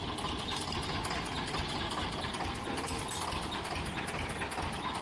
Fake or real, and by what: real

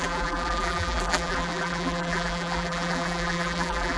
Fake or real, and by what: fake, vocoder, BigVGAN v2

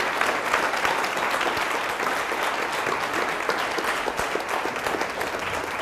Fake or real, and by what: real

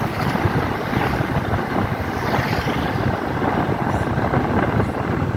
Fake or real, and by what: fake, vocoder, BigVGAN v2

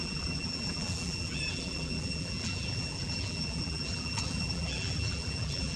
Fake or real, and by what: fake, vocoder, BigVGAN v2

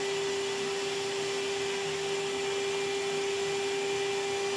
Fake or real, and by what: real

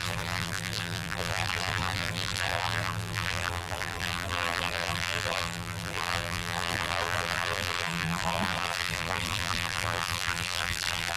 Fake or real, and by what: fake, vocoder, BigVGAN v2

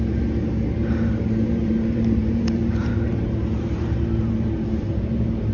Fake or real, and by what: fake, vocoder, BigVGAN v2